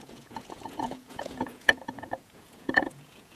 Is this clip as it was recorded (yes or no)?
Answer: no